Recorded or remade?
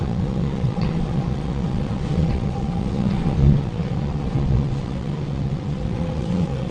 remade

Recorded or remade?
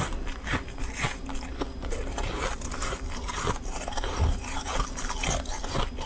recorded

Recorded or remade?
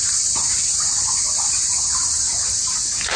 recorded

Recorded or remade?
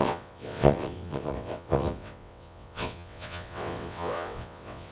remade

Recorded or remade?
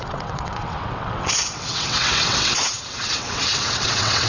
remade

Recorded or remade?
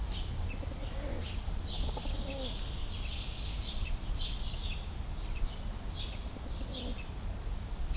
recorded